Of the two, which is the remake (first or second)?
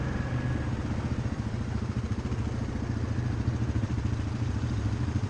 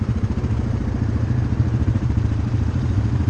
second